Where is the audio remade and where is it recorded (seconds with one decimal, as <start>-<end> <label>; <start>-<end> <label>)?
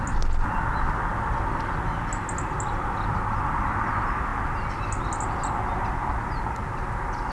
0.0-7.3 recorded